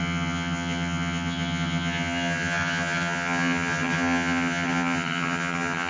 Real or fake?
fake